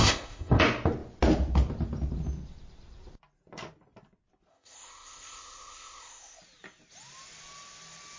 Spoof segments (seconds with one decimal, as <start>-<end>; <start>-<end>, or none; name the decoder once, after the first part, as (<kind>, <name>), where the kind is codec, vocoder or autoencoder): 0.0-0.6 (codec, ZipCodec); 4.5-6.4